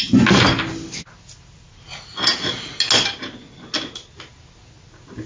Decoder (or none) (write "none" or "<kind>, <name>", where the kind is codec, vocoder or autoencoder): none